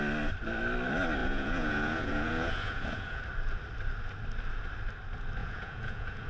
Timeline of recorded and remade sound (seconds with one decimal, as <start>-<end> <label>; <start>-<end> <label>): 0.0-1.2 recorded; 1.2-3.2 remade; 3.2-5.4 recorded; 5.4-6.3 remade